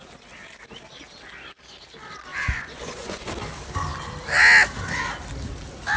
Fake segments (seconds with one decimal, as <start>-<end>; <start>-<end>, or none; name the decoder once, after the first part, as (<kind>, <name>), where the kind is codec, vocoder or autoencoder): 2.3-3.3 (vocoder, Vocos)